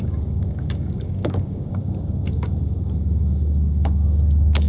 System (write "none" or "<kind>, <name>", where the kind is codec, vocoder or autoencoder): codec, DAC